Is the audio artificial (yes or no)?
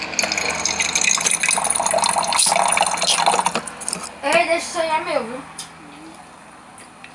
no